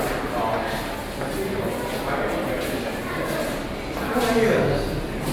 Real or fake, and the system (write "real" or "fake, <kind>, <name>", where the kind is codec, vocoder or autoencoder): real